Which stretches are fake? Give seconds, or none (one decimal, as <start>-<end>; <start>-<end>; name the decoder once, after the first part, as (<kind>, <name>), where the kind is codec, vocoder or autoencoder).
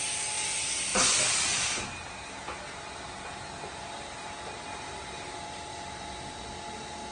none